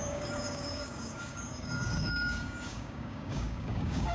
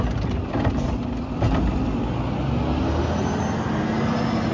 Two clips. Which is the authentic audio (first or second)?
second